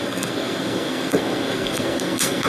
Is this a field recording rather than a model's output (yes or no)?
no